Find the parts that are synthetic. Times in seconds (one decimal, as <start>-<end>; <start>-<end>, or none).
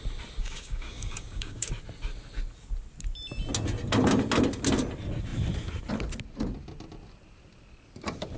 0.4-1.7